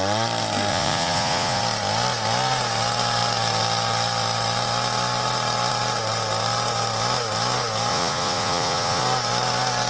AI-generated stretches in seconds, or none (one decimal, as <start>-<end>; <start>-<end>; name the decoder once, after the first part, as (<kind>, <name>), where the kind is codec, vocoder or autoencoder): 0.7-1.6 (vocoder, Vocos); 7.9-9.0